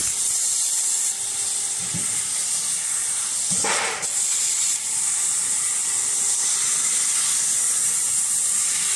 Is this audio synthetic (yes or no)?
no